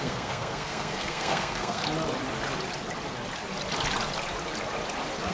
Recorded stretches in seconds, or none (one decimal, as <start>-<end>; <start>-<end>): 1.8-5.3